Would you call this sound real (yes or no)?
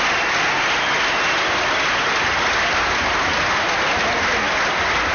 yes